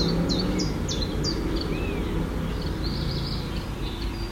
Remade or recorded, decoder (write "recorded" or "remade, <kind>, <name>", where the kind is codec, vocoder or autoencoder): recorded